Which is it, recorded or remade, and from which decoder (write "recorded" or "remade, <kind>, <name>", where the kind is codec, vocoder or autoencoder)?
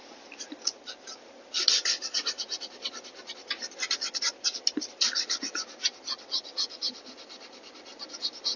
recorded